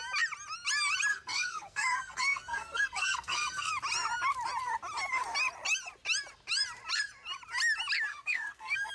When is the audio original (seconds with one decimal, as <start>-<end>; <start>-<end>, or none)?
0.0-1.1; 3.7-8.1